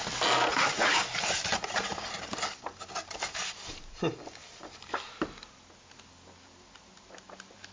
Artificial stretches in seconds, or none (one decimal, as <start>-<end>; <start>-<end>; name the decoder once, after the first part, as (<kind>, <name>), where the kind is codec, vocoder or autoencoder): 0.5-5.1 (vocoder, BigVGAN v2)